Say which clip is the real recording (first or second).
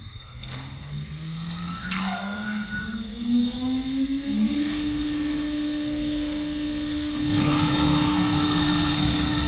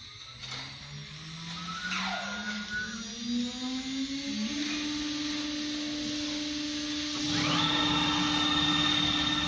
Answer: second